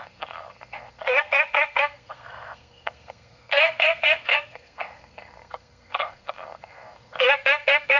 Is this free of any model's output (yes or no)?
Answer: no